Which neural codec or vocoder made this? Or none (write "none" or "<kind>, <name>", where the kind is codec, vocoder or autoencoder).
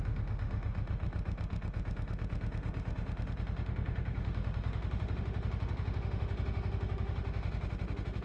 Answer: autoencoder, DAC-VAE